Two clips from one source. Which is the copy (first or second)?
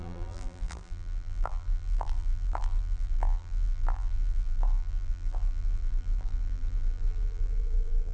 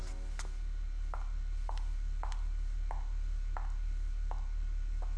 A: first